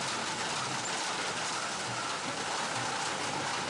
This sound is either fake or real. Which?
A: real